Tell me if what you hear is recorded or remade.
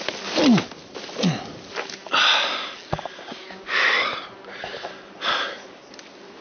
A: recorded